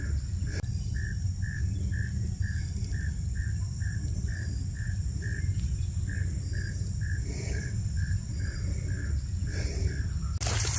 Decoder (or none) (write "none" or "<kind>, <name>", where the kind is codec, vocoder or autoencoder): none